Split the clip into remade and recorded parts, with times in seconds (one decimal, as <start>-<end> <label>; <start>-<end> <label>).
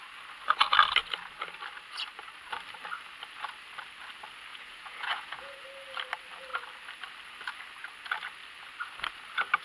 0.0-4.5 recorded; 4.5-5.6 remade; 5.6-9.6 recorded